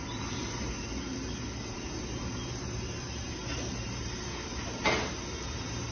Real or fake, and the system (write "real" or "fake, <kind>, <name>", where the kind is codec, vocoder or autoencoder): fake, vocoder, BigVGAN v2